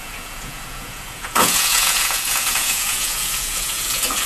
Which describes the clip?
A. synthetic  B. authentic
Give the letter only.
A